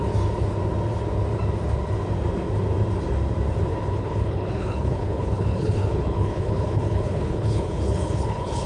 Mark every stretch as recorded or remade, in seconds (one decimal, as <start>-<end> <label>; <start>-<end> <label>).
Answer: 0.0-3.7 recorded; 3.7-8.7 remade

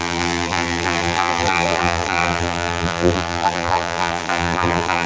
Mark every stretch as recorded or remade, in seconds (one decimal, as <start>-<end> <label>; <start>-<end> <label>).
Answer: 0.0-5.1 remade

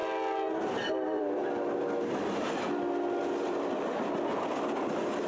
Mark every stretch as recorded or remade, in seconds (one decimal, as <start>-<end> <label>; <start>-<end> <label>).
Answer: 0.0-0.6 recorded; 0.6-1.4 remade; 1.4-4.6 recorded; 4.6-5.3 remade